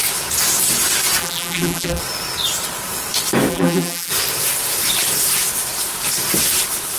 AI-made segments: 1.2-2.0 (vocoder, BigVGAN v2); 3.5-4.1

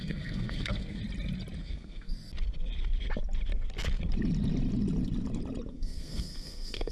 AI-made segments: 0.0-1.0 (codec, SNAC); 1.6-2.1; 5.7-6.9

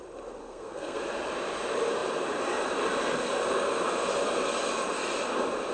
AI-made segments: 0.4-1.0 (codec, SNAC)

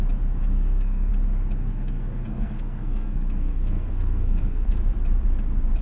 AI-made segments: 0.4-1.1 (codec, SNAC); 1.6-4.8